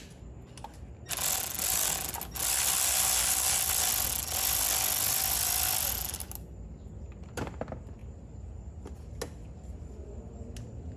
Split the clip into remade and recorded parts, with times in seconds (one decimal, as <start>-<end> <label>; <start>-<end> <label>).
0.0-11.0 recorded